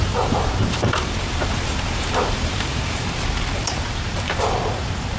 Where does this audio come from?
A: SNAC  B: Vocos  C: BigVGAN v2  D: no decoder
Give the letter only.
C